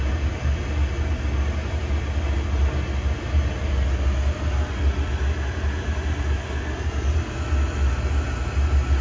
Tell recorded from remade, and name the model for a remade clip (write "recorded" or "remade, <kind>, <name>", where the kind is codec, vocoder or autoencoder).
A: recorded